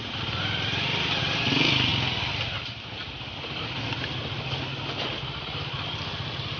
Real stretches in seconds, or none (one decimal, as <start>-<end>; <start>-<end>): 0.0-6.6